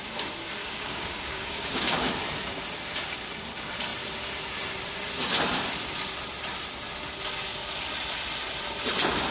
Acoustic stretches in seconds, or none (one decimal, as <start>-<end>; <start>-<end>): 0.0-0.6; 2.1-9.3